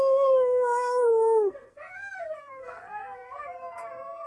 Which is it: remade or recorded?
remade